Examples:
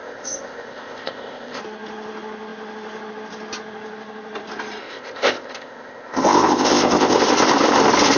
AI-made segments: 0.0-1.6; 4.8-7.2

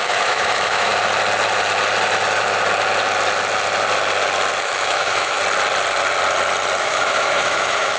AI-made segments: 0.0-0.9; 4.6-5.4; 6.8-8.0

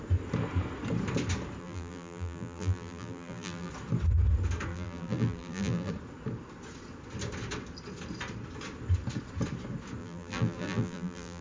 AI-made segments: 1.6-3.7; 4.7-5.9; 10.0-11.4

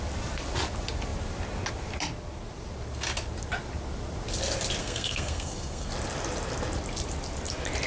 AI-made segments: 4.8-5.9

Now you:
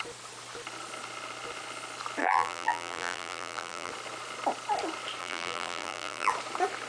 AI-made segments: 2.2-3.9; 5.2-6.3

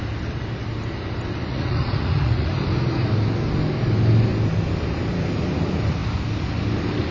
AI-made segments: 1.5-2.5

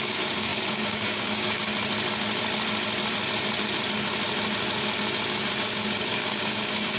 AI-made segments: 0.0-1.7; 5.5-7.0

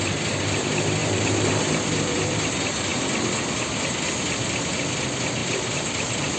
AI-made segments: 1.0-2.5; 5.4-6.4